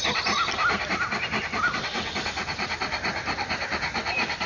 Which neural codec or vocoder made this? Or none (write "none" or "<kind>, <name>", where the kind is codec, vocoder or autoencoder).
none